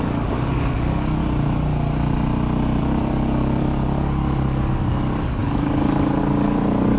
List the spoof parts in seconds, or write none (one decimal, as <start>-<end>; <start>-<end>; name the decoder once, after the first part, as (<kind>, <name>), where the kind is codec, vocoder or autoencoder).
0.0-1.2 (codec, DAC); 2.8-7.0